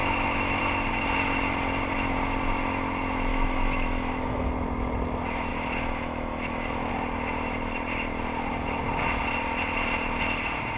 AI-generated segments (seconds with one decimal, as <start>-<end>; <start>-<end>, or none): 0.0-0.6; 3.3-4.5; 5.5-6.9